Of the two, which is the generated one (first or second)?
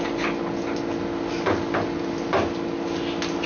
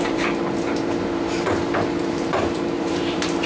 second